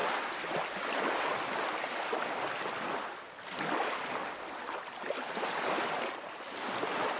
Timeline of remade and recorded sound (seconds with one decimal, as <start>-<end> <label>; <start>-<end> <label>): 0.0-7.2 recorded